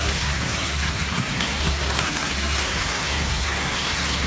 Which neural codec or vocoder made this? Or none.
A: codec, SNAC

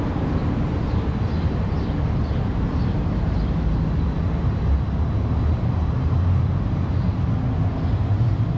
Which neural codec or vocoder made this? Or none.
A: none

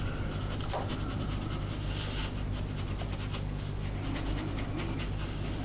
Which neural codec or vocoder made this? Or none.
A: none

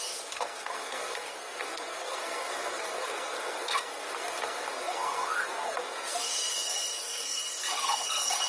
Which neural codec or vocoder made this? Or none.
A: codec, SNAC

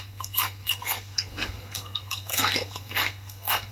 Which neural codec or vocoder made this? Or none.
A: codec, SNAC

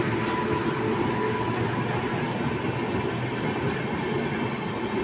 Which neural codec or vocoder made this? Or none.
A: none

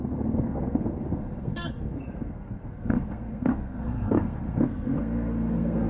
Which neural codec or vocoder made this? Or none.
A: codec, SNAC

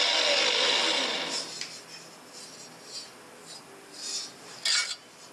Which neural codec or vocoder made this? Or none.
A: none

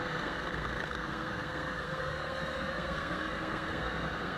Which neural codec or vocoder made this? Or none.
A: codec, SNAC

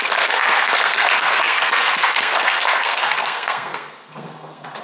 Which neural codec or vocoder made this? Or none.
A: codec, SNAC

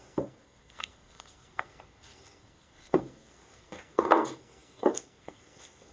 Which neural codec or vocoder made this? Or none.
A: codec, SNAC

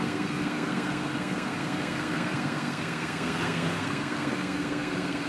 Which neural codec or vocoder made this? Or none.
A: codec, SNAC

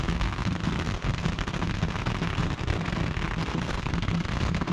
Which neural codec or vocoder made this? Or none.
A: codec, SNAC